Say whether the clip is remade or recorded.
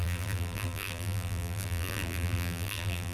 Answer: remade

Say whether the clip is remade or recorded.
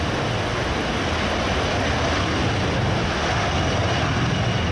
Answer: recorded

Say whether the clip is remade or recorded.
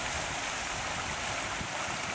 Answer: recorded